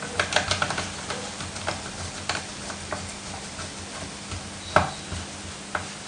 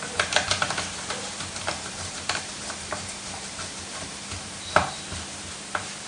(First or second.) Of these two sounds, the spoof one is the second